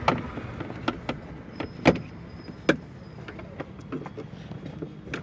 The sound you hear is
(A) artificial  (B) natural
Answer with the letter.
B